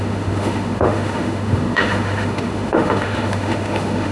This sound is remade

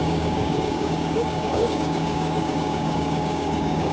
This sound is remade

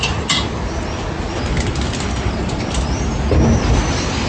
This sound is recorded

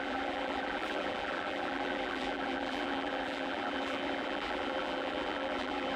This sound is remade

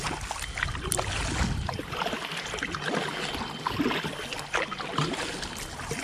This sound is recorded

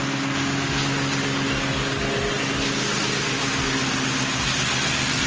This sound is recorded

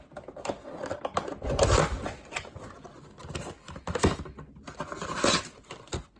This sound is recorded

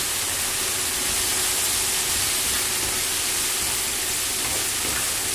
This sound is recorded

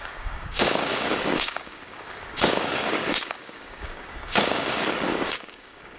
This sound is remade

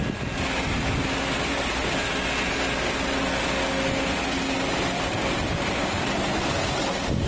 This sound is recorded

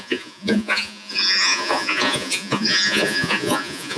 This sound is remade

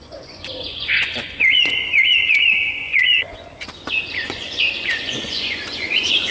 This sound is remade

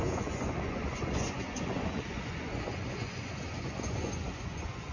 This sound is remade